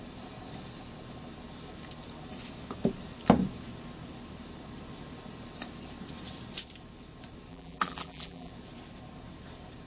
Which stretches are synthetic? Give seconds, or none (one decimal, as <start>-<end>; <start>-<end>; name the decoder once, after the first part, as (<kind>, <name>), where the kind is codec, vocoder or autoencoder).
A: 7.5-8.5 (vocoder, BigVGAN v2)